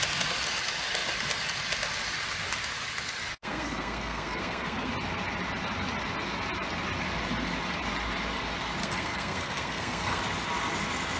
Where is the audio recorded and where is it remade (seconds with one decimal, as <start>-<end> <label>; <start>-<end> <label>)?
0.0-3.3 recorded; 3.3-4.9 remade; 4.9-8.8 recorded; 8.8-10.2 remade; 10.2-11.2 recorded